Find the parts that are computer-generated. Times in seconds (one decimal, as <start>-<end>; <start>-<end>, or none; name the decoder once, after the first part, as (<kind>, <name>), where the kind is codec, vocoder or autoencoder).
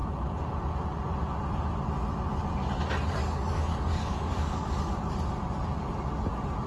3.2-4.8 (codec, DAC)